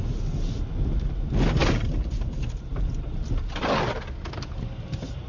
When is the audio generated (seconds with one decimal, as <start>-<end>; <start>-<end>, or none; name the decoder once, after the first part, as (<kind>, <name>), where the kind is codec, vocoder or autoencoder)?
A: none